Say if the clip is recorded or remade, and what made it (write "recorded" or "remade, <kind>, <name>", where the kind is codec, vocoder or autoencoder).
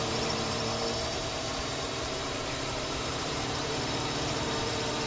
remade, vocoder, BigVGAN v2